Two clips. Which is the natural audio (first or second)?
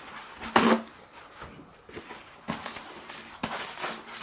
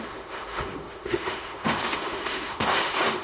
first